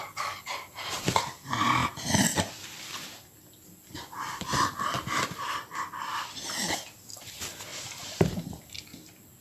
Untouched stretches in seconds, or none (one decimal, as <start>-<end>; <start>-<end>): 0.5-9.4